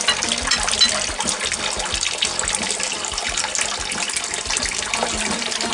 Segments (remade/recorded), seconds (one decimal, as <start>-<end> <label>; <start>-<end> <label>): 0.0-5.7 recorded